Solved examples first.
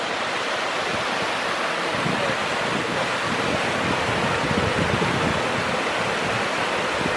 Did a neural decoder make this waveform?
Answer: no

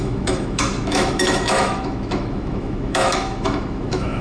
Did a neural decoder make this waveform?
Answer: yes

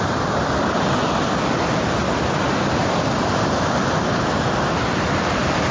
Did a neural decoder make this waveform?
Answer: yes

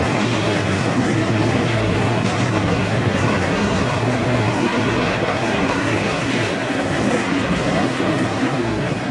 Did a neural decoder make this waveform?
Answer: yes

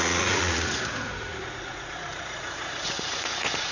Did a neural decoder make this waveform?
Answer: yes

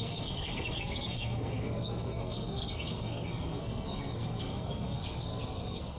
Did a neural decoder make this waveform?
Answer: yes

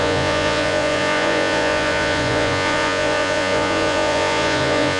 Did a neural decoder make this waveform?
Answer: yes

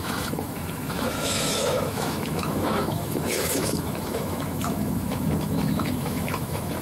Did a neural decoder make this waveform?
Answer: yes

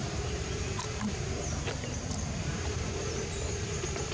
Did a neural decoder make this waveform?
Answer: yes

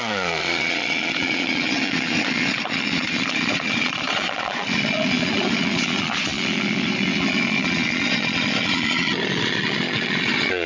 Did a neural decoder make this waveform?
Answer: yes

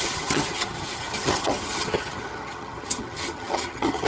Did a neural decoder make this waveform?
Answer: yes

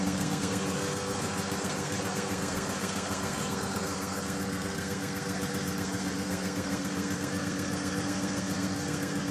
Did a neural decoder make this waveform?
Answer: yes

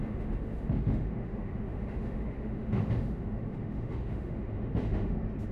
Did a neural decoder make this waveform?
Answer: yes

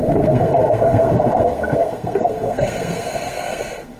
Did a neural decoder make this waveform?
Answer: yes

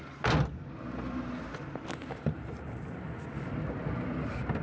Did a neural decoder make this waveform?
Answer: no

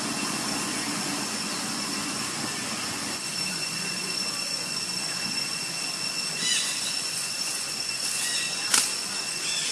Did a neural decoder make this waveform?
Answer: yes